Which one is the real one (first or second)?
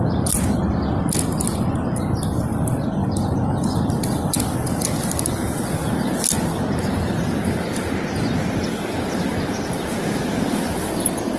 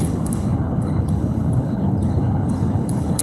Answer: first